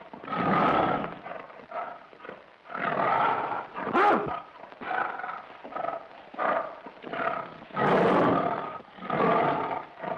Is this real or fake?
real